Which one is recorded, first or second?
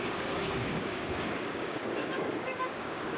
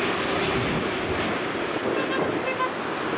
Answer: second